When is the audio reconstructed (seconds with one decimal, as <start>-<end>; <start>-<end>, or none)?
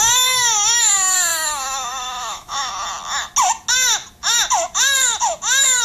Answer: 1.3-2.7